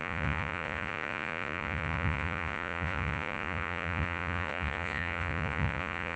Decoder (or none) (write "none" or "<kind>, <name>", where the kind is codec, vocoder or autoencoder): vocoder, Vocos